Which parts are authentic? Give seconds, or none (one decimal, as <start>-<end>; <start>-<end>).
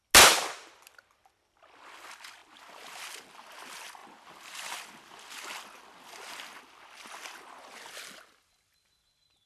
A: 0.0-9.5